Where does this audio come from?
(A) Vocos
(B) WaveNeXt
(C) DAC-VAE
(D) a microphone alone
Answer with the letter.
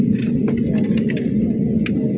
D